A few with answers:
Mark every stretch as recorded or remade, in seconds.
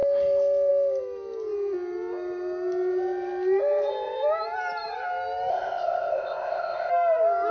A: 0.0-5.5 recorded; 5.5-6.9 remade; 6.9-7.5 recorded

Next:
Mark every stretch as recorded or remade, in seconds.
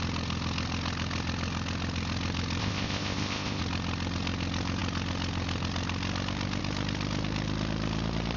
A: 0.0-2.6 recorded; 2.6-3.6 remade; 3.6-8.4 recorded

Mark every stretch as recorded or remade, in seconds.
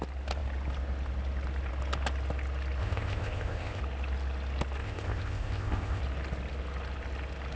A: 0.0-2.8 recorded; 2.8-3.8 remade; 3.8-4.8 recorded; 4.8-6.0 remade; 6.0-7.6 recorded